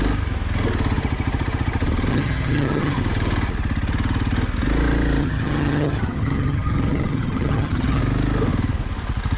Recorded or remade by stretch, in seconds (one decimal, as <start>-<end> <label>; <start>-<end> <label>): 0.0-2.1 recorded; 2.1-3.0 remade; 3.0-5.2 recorded; 5.2-8.0 remade; 8.0-9.4 recorded